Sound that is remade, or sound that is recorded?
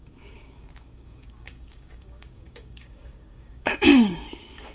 remade